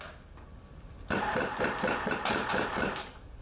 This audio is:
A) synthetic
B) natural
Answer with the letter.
B